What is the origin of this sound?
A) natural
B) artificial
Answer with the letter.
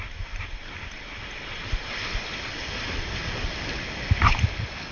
A